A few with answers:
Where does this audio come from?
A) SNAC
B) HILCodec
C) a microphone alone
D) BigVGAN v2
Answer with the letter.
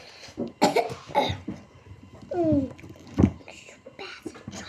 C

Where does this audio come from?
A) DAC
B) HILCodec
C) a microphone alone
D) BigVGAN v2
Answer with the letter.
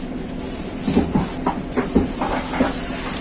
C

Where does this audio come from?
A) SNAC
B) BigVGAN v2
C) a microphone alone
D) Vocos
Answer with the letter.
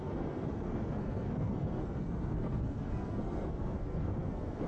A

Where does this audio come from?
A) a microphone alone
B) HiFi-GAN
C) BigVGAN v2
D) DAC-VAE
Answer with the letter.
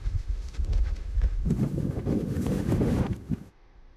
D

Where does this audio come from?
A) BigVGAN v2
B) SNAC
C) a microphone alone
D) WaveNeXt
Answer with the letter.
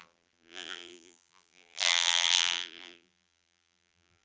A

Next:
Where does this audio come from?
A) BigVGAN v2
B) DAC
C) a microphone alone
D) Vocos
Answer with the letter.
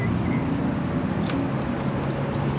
C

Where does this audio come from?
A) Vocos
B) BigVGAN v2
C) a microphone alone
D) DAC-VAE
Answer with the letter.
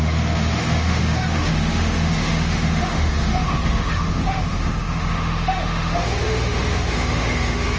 D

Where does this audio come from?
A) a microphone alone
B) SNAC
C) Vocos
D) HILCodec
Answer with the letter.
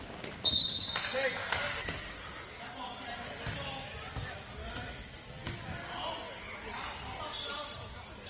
A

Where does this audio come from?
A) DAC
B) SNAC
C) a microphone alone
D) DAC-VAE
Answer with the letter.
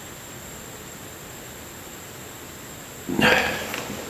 C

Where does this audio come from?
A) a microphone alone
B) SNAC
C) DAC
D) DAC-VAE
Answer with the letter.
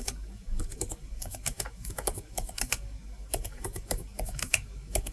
C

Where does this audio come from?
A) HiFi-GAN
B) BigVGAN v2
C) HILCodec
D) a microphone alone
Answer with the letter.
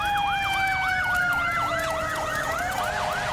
D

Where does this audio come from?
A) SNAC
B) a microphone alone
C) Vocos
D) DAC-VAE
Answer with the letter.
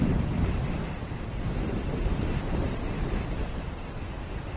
B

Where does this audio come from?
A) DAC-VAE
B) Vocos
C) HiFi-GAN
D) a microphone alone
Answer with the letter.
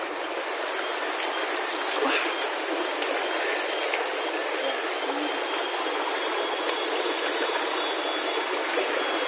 D